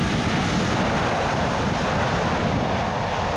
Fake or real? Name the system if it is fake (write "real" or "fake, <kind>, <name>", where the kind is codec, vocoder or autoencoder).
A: real